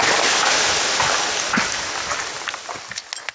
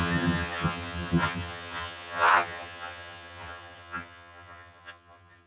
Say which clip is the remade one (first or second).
second